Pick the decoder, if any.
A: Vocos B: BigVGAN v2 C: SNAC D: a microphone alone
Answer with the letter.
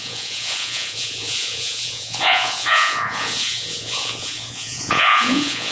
A